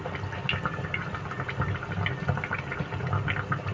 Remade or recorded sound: recorded